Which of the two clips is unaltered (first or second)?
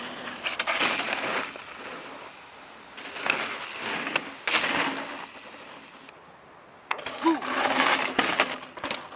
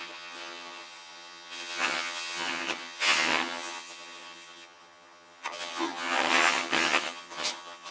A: first